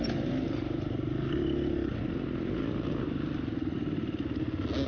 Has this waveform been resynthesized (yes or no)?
no